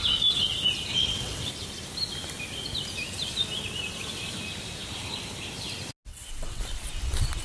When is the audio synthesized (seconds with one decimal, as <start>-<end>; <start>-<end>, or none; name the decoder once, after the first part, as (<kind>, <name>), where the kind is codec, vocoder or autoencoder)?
0.9-1.5 (vocoder, WaveNeXt); 6.1-6.6